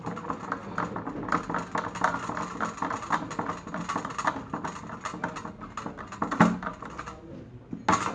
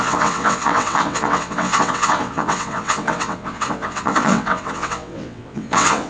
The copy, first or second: second